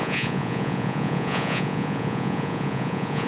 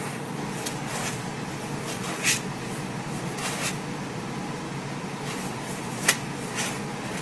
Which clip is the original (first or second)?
second